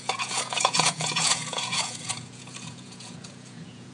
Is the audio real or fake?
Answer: fake